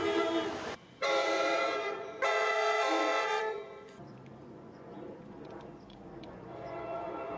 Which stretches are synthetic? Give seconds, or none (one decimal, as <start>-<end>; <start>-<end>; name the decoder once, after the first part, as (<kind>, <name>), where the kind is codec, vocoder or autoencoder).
0.7-7.4 (vocoder, Vocos)